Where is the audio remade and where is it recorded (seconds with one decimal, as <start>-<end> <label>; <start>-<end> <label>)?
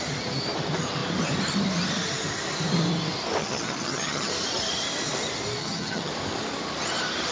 0.0-3.4 recorded; 3.4-4.3 remade; 4.3-5.6 recorded; 5.6-6.1 remade; 6.1-7.3 recorded